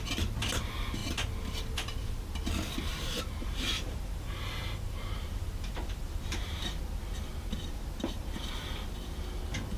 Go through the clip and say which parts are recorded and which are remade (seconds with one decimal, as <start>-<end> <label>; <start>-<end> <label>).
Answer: 0.0-2.9 recorded; 2.9-6.8 remade; 6.8-9.8 recorded